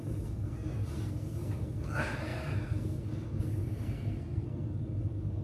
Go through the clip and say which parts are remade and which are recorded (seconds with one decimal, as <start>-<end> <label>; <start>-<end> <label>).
0.0-5.4 remade